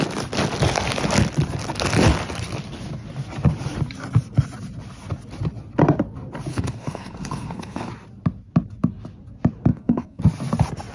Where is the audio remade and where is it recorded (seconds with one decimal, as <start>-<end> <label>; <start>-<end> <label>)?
0.0-6.5 recorded; 6.5-7.9 remade; 7.9-9.7 recorded; 9.7-10.2 remade; 10.2-10.9 recorded